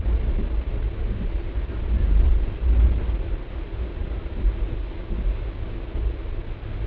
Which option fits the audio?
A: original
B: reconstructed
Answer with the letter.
A